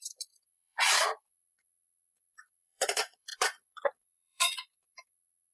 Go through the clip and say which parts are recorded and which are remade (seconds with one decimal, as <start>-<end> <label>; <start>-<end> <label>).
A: 0.0-5.5 remade